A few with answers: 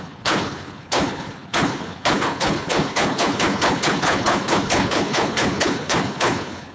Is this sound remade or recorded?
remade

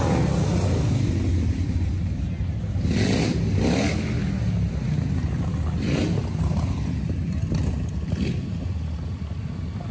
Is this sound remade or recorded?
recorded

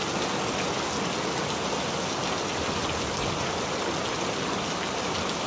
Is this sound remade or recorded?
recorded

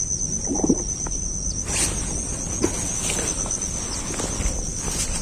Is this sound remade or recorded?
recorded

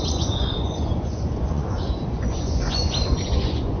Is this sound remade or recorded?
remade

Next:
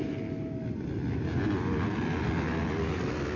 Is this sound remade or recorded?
recorded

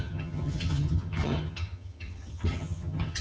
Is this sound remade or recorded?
remade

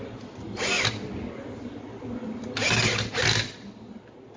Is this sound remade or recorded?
recorded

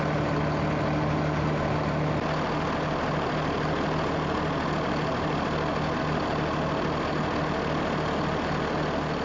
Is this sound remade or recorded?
recorded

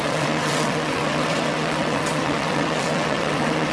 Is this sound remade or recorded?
remade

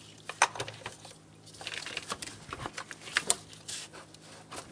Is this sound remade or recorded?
recorded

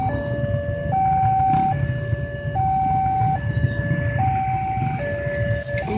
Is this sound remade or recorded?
recorded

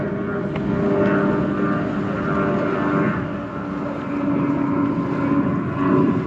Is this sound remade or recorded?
recorded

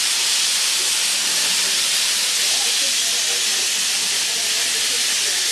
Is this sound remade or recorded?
recorded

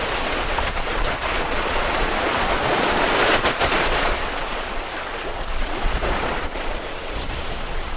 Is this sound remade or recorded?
remade